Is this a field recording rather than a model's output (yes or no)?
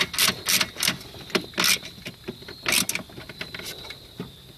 yes